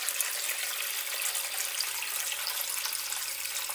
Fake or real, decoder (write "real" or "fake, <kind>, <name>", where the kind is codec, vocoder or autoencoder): real